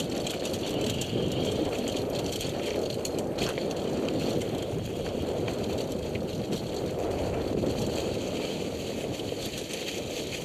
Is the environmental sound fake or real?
real